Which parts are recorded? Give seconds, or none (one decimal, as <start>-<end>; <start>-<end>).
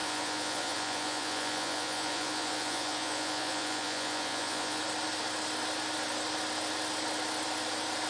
4.8-8.1